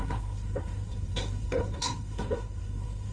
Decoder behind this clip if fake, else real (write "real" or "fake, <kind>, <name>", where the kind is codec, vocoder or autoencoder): fake, codec, SNAC